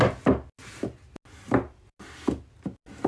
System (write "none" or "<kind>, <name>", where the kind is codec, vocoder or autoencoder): none